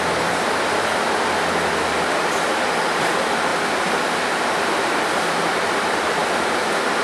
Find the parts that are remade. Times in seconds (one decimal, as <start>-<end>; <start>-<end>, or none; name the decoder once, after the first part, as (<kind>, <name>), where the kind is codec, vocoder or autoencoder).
3.5-5.0 (vocoder, BigVGAN v2)